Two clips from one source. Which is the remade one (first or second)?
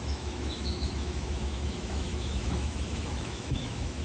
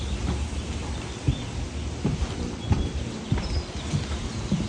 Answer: first